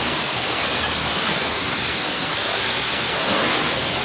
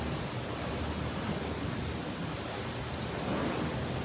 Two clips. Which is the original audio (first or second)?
second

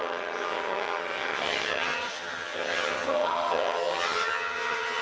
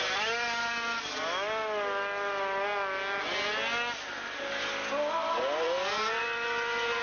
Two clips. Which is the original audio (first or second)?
second